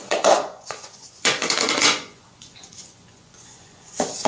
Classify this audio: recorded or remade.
remade